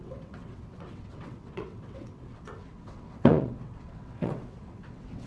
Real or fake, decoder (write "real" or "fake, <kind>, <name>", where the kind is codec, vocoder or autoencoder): fake, vocoder, WaveNeXt